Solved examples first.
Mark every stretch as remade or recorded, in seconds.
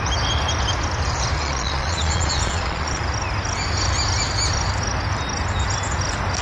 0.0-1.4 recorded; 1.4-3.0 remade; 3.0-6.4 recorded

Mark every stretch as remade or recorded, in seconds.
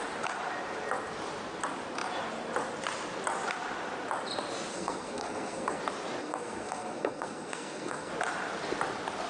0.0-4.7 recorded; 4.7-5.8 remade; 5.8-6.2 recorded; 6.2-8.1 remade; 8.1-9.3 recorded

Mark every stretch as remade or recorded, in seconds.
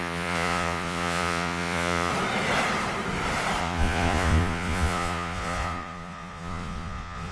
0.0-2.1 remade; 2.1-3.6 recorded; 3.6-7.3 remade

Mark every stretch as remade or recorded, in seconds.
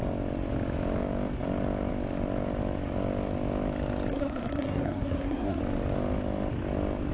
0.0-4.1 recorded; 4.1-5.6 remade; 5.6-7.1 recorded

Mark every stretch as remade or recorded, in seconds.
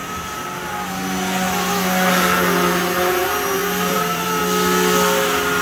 0.0-0.7 remade; 0.7-3.6 recorded; 3.6-4.4 remade; 4.4-5.6 recorded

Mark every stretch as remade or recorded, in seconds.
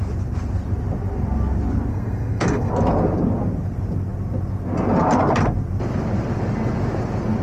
0.0-1.9 recorded; 1.9-2.7 remade; 2.7-7.4 recorded